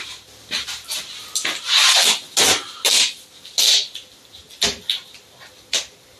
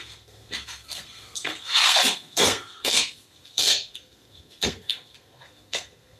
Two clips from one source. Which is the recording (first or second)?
first